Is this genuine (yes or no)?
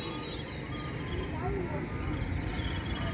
yes